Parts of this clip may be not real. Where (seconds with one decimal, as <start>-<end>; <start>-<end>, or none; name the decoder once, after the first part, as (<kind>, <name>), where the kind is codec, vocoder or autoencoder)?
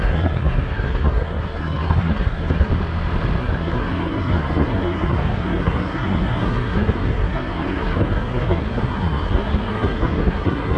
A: 0.0-2.7 (codec, SNAC); 3.4-10.8